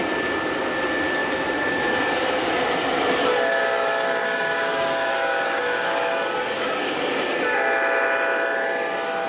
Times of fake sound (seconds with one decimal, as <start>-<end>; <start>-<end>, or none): 4.2-7.0